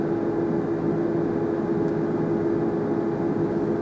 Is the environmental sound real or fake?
real